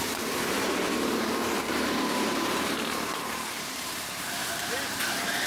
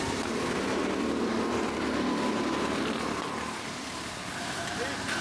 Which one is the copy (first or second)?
first